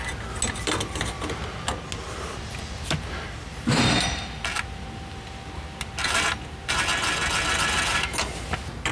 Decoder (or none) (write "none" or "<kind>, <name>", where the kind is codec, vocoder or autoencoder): none